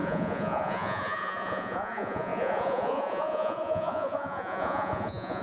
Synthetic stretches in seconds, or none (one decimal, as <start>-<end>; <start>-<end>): 0.0-5.4